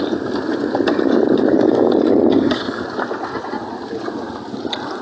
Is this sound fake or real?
real